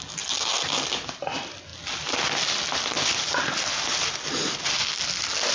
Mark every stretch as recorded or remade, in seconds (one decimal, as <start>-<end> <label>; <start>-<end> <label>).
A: 0.0-5.5 recorded